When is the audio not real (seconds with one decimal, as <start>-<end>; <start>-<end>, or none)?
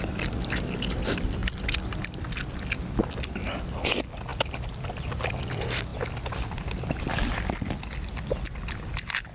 4.3-5.5